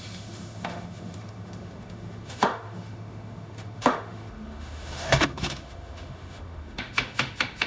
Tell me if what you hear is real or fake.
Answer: fake